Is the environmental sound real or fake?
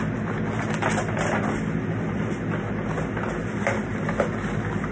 real